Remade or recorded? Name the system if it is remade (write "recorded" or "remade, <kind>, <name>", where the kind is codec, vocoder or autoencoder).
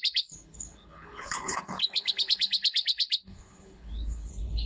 remade, codec, HILCodec